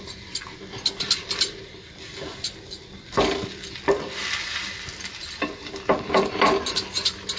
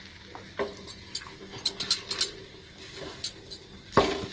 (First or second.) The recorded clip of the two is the second